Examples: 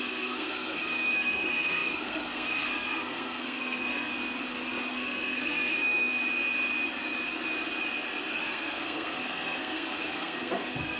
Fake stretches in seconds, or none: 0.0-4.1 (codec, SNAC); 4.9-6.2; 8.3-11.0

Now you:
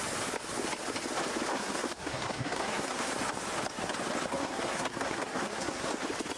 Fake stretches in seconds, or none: 1.5-3.1 (codec, SNAC); 4.3-5.9

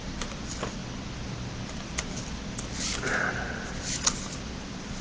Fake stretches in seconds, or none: none

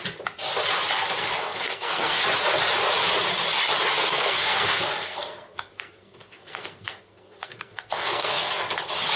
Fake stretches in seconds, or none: 1.2-2.2 (codec, SNAC); 3.9-8.5

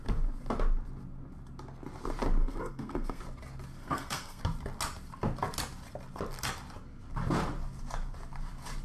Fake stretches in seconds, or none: 2.4-3.2 (codec, SNAC); 3.8-4.4

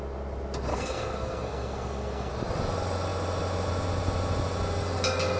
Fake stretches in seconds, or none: 0.7-2.3 (codec, SNAC)